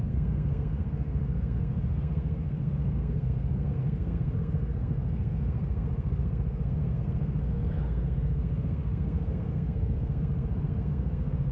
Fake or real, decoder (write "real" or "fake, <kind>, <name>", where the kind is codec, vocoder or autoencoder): fake, codec, SNAC